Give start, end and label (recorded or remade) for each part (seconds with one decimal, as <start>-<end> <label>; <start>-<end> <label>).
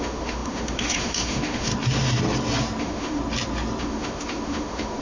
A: 0.0-1.7 remade; 1.7-2.8 recorded; 2.8-3.2 remade; 3.2-3.8 recorded; 3.8-5.0 remade